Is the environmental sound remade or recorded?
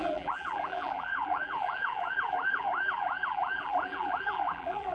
remade